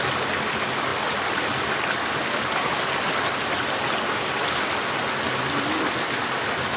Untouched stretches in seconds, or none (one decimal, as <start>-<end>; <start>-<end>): 0.0-6.8